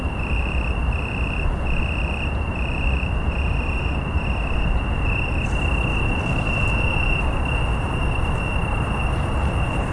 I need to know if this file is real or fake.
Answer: real